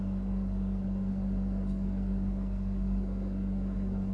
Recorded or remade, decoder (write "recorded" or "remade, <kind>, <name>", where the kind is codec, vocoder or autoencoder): remade, codec, SNAC